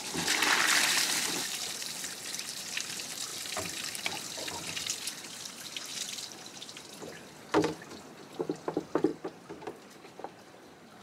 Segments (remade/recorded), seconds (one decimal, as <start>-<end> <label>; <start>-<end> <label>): 0.0-11.0 recorded